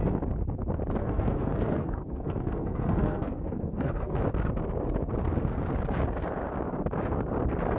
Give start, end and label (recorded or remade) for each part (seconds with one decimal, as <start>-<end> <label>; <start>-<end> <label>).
0.0-1.0 recorded; 1.0-4.2 remade; 4.2-7.8 recorded